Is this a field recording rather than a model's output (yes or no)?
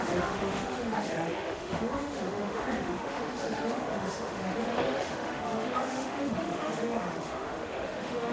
no